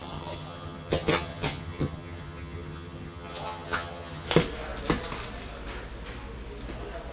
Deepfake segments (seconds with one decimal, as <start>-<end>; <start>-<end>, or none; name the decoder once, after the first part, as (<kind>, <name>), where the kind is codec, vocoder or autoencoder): 0.0-4.3 (vocoder, HiFi-GAN)